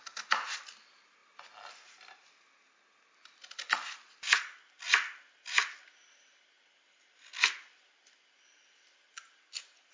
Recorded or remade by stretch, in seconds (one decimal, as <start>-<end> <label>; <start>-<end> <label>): 0.0-9.9 recorded